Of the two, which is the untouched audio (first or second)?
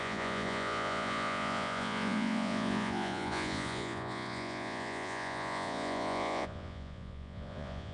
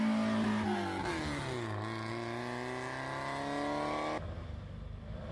second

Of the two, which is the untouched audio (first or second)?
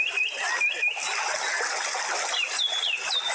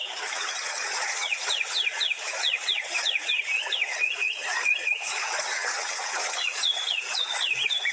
first